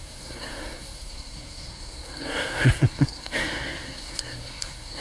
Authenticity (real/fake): fake